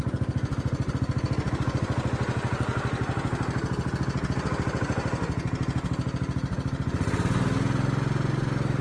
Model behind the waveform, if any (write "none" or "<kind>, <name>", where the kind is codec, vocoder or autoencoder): none